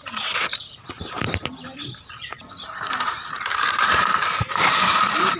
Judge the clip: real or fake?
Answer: fake